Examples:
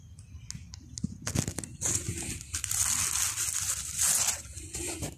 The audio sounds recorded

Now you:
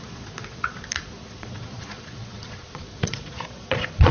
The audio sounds remade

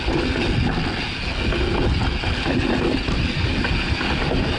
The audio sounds recorded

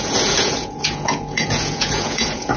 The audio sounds remade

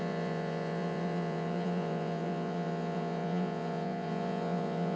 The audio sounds remade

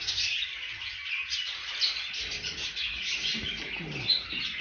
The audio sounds recorded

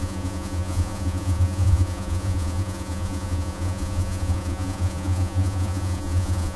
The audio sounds remade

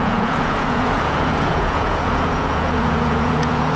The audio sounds remade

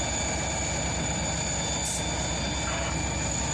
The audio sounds recorded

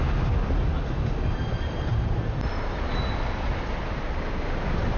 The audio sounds recorded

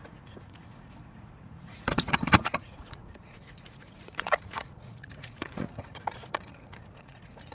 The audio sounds remade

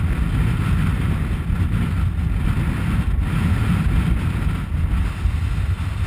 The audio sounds recorded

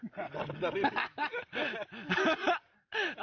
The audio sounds recorded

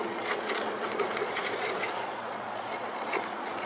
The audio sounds remade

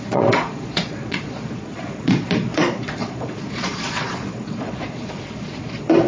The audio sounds remade